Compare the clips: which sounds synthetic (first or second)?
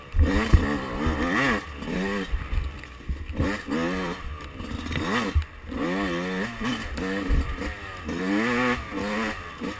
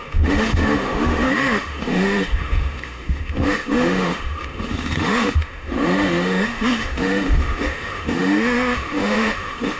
second